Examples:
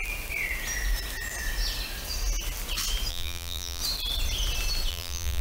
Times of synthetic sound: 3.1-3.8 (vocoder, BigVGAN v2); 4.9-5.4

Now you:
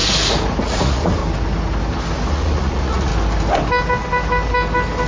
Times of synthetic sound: 0.6-1.2 (vocoder, Vocos); 2.3-3.1